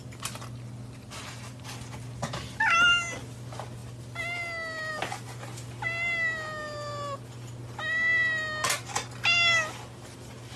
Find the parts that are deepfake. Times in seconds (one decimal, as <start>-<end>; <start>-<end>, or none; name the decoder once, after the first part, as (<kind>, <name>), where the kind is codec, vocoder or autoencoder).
none